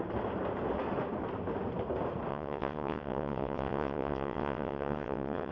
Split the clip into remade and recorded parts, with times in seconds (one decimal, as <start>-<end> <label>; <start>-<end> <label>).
0.0-2.3 recorded; 2.3-5.5 remade